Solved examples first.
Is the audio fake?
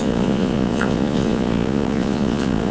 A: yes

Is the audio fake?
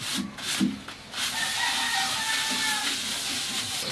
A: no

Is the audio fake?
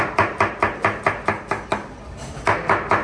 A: no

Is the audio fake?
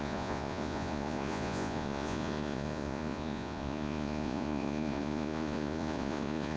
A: yes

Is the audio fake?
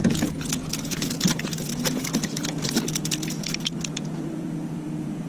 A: yes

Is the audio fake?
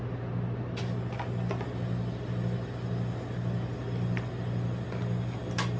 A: no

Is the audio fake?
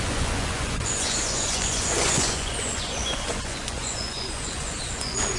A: yes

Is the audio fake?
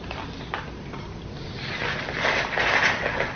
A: no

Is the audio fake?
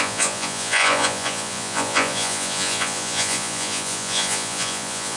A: yes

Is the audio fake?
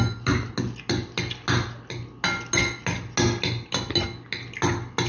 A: no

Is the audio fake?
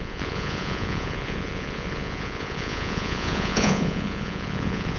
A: yes